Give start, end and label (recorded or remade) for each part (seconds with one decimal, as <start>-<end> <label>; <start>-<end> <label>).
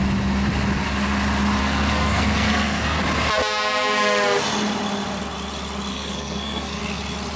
0.0-1.6 recorded; 1.6-3.0 remade; 3.0-5.9 recorded; 5.9-6.8 remade; 6.8-7.4 recorded